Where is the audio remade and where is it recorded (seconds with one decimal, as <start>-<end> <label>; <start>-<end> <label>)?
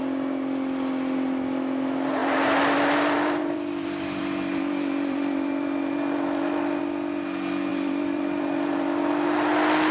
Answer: 0.0-2.2 recorded; 2.2-6.8 remade; 6.8-7.7 recorded; 7.7-9.1 remade; 9.1-9.9 recorded